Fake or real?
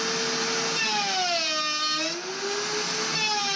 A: real